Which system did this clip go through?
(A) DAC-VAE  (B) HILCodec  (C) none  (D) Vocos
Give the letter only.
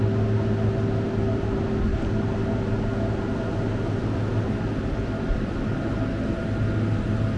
C